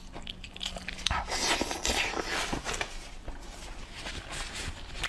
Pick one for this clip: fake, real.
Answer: real